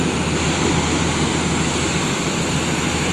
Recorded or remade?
recorded